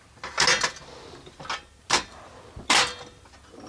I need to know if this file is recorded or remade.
recorded